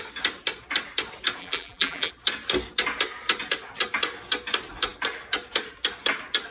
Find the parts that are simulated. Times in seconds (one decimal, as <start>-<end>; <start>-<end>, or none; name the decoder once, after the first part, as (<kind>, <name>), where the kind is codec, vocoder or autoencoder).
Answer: 1.4-2.1 (vocoder, BigVGAN v2)